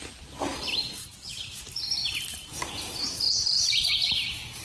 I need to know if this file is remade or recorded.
recorded